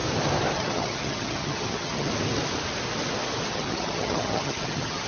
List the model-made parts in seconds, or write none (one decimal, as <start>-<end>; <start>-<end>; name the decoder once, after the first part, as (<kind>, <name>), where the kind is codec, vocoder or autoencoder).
0.5-2.1 (vocoder, HiFi-GAN); 3.5-5.1